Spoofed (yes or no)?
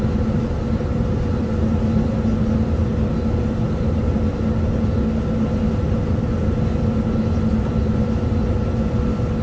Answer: no